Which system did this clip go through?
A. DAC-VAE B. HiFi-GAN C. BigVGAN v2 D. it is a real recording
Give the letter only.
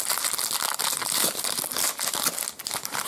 D